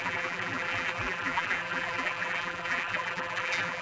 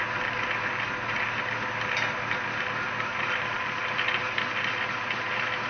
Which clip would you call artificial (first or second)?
first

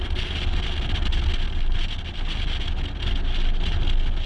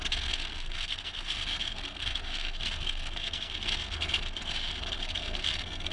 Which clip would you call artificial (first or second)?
second